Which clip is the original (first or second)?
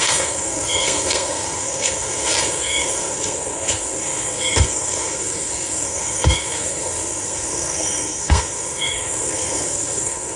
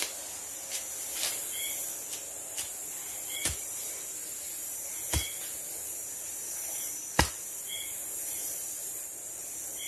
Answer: second